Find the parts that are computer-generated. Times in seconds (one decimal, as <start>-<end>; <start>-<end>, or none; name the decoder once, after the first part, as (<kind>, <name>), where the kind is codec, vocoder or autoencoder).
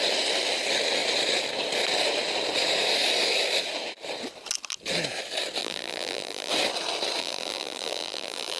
5.6-6.5 (vocoder, BigVGAN v2); 7.2-8.6